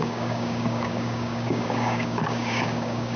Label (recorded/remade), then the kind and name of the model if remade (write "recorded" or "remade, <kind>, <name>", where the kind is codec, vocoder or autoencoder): remade, codec, DAC